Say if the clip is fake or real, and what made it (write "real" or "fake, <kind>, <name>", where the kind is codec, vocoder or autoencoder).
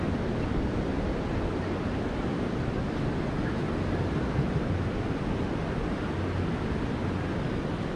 real